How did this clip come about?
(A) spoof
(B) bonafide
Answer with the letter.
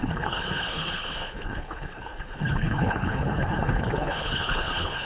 A